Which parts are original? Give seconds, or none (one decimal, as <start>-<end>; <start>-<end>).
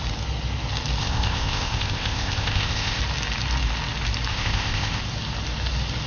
0.0-1.0; 3.0-4.3; 5.0-6.1